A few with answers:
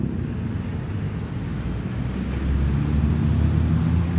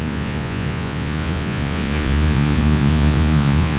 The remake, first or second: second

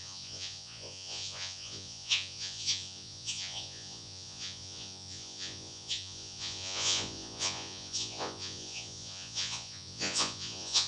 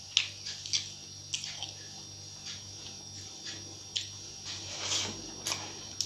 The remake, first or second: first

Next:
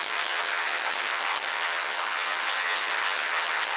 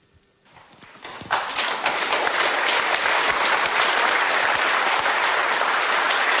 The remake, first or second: first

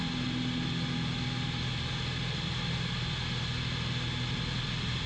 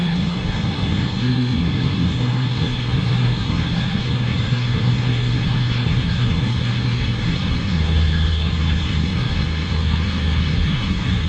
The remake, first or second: second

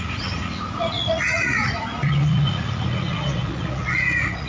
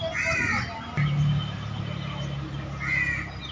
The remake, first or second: first